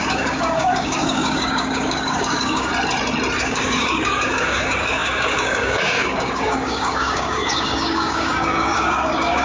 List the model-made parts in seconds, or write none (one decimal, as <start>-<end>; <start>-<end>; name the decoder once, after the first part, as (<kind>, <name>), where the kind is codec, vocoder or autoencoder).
0.0-2.7 (codec, DAC); 3.4-9.4